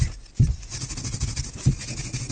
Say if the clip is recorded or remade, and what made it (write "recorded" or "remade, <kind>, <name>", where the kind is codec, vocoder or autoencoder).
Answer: recorded